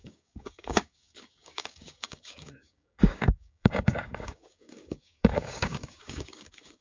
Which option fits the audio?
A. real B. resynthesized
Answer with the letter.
B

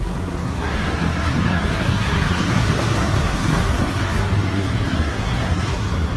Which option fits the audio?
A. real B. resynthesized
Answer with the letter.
B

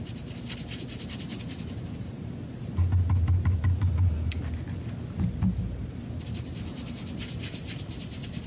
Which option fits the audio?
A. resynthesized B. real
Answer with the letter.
B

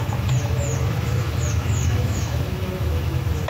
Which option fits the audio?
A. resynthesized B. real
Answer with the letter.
A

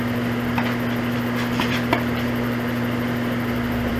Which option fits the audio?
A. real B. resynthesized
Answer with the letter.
B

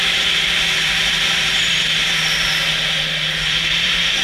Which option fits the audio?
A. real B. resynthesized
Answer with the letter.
B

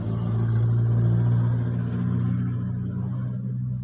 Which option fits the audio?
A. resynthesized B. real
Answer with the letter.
B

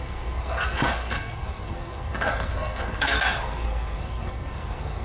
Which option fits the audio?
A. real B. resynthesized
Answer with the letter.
B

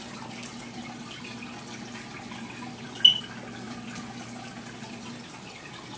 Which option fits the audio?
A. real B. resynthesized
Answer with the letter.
A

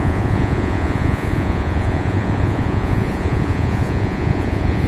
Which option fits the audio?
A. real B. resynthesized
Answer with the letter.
B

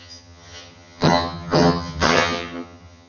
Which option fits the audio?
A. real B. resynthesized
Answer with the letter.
B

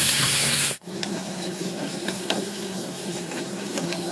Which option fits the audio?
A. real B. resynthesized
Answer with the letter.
B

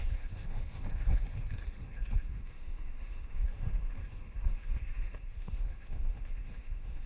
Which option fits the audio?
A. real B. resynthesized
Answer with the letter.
B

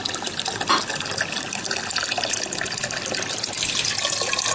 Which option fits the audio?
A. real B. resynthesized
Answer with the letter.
A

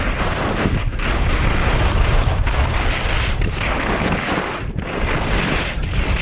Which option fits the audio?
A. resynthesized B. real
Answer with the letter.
B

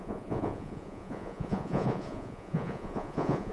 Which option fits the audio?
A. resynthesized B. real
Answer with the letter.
A